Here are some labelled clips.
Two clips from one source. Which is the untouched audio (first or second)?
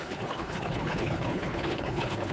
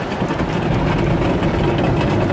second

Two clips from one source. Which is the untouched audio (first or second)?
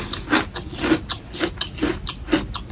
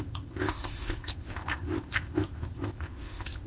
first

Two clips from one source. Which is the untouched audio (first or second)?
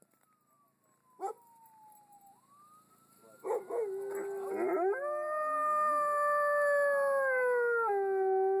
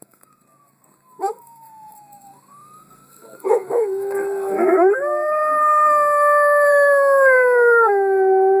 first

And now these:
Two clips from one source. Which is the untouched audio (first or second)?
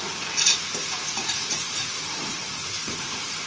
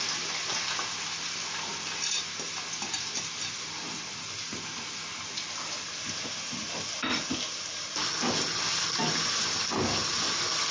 second